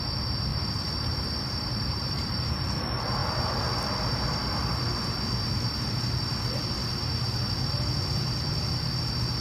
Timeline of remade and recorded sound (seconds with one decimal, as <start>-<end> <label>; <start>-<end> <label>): 0.0-0.5 recorded; 0.5-2.5 remade; 2.5-9.4 recorded